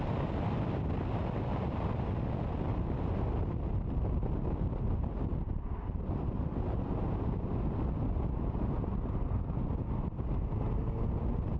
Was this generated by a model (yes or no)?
no